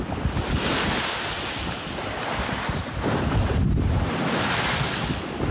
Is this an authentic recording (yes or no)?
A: yes